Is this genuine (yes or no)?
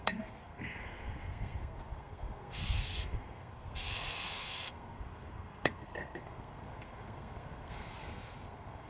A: no